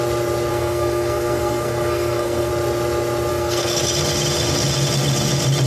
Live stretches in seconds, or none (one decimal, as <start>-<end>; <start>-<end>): 0.0-0.5; 2.5-3.3; 3.8-5.7